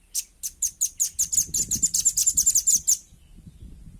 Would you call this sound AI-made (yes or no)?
no